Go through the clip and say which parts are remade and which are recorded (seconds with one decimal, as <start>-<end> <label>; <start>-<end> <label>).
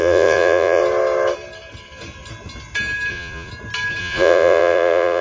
0.0-0.8 remade; 0.8-3.1 recorded; 3.1-3.5 remade; 3.5-4.0 recorded; 4.0-5.2 remade